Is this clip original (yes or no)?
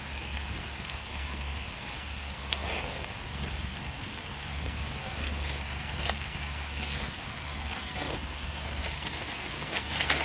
no